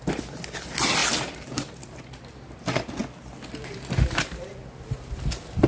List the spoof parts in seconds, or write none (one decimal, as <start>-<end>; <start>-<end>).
1.0-2.6